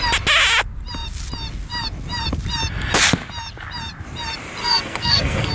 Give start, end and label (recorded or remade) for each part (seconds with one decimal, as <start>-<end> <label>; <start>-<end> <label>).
0.0-4.6 recorded; 4.6-5.5 remade

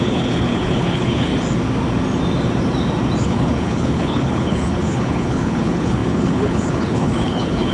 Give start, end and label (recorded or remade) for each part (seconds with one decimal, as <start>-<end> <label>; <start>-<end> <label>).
0.0-1.3 remade; 1.3-3.2 recorded; 3.2-7.7 remade

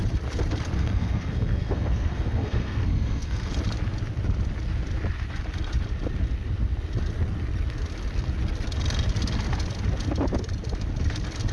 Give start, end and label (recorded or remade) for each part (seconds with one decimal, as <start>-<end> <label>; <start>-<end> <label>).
0.0-0.8 recorded; 0.8-3.5 remade; 3.5-11.5 recorded